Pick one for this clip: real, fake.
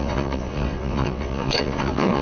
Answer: fake